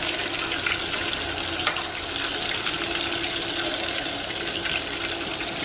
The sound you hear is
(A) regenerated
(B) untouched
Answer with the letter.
B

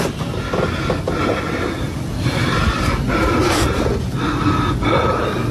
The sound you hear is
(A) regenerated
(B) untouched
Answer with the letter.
B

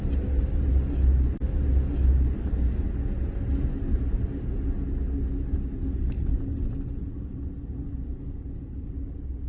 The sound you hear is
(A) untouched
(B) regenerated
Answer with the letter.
A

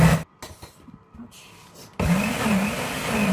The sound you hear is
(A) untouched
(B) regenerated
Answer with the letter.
A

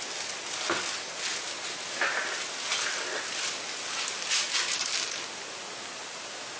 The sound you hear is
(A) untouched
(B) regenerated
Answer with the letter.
A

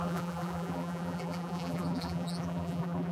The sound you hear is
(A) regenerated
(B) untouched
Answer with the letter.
A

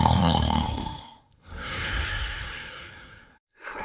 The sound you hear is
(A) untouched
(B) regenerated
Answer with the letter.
B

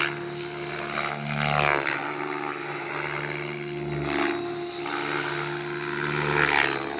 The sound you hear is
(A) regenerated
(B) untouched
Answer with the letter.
B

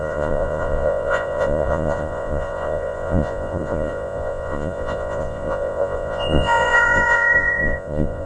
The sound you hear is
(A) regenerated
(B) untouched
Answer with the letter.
A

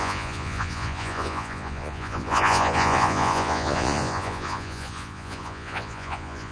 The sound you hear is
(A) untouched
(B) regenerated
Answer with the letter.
B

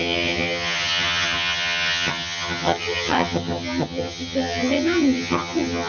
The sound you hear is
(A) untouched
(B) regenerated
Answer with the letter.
B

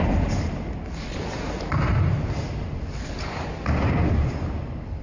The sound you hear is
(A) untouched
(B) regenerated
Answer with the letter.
A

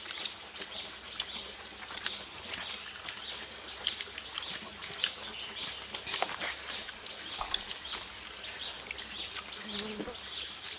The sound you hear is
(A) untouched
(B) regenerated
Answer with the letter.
A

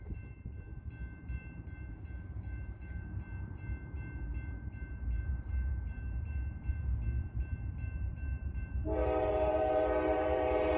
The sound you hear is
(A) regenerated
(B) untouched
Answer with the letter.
A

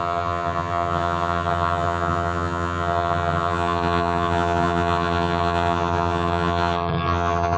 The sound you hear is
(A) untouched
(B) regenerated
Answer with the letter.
B